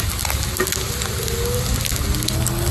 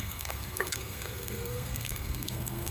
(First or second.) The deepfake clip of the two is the second